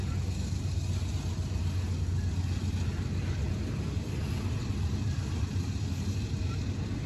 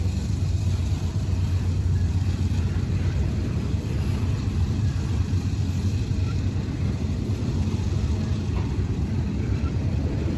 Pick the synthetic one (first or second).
second